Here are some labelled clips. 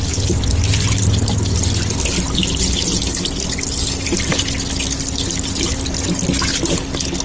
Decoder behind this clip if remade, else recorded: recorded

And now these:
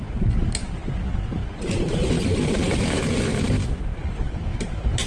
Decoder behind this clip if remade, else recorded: recorded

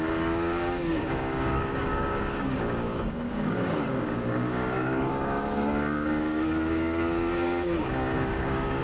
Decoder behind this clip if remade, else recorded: remade, codec, DAC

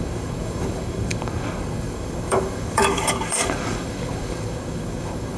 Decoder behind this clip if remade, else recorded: remade, codec, DAC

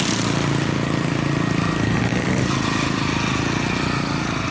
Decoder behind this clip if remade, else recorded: recorded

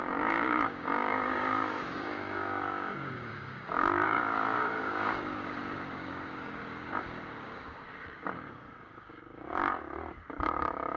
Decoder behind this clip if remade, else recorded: remade, codec, DAC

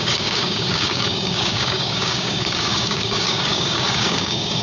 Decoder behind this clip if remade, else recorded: remade, codec, DAC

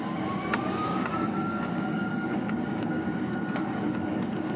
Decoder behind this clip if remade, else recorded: remade, codec, DAC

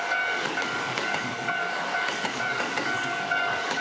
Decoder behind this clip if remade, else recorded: remade, codec, DAC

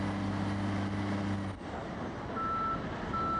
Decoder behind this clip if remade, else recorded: recorded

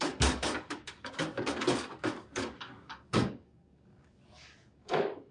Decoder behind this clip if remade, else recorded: remade, codec, DAC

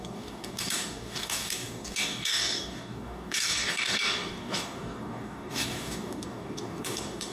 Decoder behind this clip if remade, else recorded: remade, codec, DAC